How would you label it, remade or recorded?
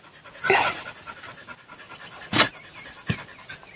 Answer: recorded